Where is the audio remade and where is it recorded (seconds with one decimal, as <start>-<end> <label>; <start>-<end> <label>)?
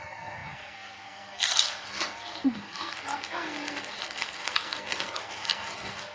0.0-6.1 remade